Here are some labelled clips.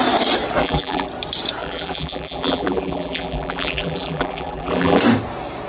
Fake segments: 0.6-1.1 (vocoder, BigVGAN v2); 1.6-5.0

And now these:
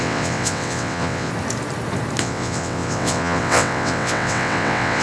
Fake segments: 0.0-1.3 (vocoder, WaveNeXt); 2.2-5.0

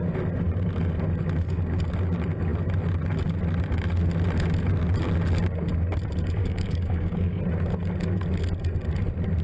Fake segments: 6.4-7.4 (codec, DAC)

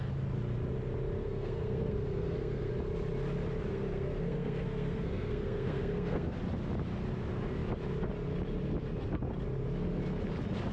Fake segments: 1.2-2.7 (codec, SNAC); 3.7-6.4

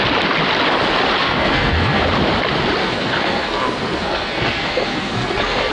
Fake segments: 1.2-2.0 (codec, SNAC); 2.8-5.7

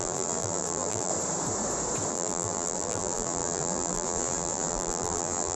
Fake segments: 0.0-1.1 (vocoder, BigVGAN v2); 2.1-5.5

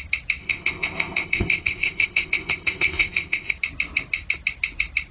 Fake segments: 0.4-3.5 (codec, ZipCodec)